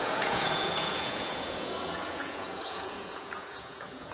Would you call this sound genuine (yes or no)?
no